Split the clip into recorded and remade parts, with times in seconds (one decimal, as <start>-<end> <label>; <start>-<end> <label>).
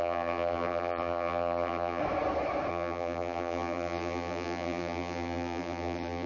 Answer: 0.0-2.0 remade; 2.0-2.7 recorded; 2.7-6.3 remade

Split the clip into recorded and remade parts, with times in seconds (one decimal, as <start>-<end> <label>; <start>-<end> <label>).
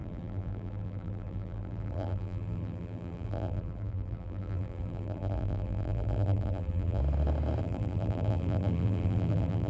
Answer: 0.0-7.0 remade; 7.0-7.6 recorded; 7.6-9.7 remade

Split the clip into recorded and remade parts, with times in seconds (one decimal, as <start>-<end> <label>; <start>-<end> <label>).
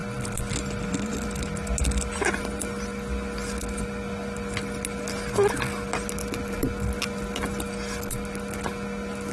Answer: 0.0-9.3 recorded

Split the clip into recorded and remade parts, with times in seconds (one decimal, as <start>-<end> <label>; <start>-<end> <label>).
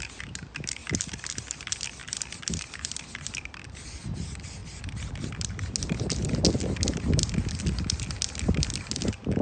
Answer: 0.0-0.8 recorded; 0.8-1.6 remade; 1.6-2.0 recorded; 2.0-3.8 remade; 3.8-9.4 recorded